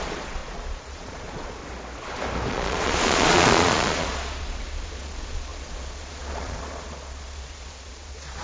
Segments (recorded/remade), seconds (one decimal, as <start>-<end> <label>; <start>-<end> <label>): 0.0-1.6 remade; 1.6-2.5 recorded; 2.5-8.4 remade